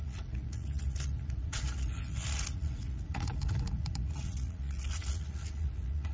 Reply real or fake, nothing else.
fake